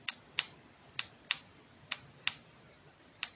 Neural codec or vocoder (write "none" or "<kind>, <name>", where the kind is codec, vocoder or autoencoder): none